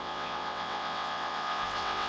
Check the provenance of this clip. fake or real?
fake